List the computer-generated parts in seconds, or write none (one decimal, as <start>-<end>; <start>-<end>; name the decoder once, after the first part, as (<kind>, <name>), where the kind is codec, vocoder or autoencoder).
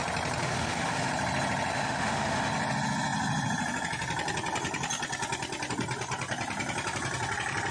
0.4-1.1 (autoencoder, DAC-VAE); 1.7-2.5